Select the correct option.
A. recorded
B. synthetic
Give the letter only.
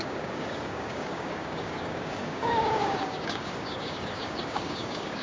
B